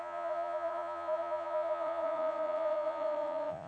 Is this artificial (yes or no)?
yes